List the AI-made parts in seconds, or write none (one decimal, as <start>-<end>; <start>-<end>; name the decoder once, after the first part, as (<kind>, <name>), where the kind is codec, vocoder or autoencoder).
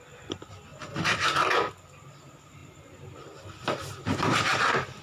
0.0-0.7 (vocoder, BigVGAN v2); 1.7-5.0